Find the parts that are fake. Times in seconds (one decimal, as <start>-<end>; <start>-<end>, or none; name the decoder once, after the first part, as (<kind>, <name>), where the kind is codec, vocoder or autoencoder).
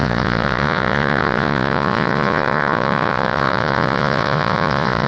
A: 0.0-5.1 (vocoder, Vocos)